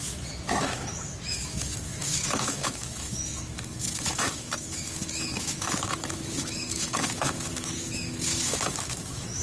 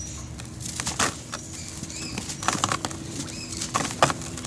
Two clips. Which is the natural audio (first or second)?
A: second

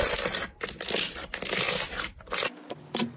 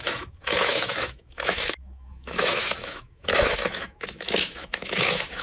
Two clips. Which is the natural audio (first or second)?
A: first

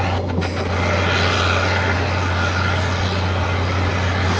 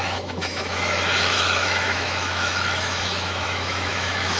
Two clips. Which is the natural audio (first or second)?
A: first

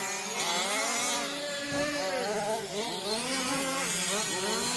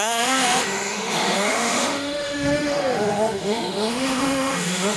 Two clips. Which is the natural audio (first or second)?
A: first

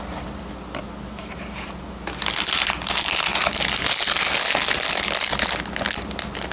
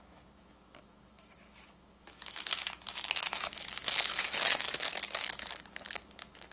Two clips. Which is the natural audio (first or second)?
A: first